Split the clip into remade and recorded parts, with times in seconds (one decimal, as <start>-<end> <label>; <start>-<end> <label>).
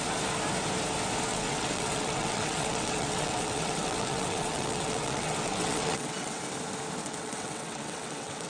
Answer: 0.0-1.3 recorded; 1.3-6.4 remade; 6.4-7.0 recorded; 7.0-8.5 remade